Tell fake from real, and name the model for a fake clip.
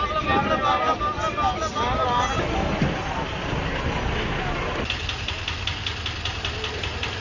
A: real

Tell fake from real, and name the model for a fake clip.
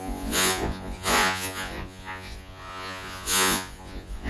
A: fake, vocoder, Vocos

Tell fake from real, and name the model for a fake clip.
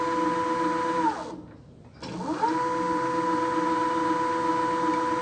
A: real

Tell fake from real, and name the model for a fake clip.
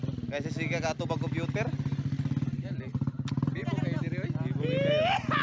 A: real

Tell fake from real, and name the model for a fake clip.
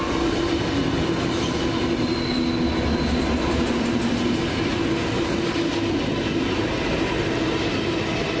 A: real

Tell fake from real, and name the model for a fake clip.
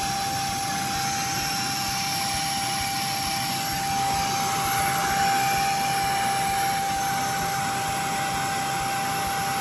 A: real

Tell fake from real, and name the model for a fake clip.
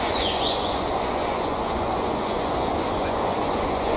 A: fake, vocoder, Vocos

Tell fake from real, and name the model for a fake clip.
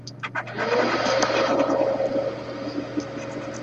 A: real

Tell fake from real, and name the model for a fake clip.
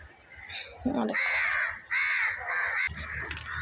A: real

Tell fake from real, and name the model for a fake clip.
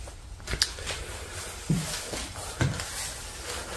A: real